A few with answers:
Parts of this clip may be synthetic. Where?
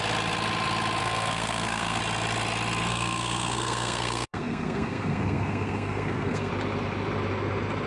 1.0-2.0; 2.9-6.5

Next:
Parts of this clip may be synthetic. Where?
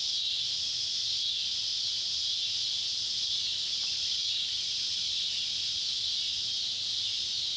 none